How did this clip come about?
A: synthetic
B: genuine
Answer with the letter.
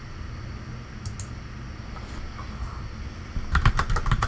B